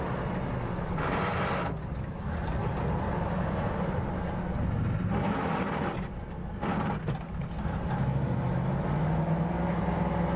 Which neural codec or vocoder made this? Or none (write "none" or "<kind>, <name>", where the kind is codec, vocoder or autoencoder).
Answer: none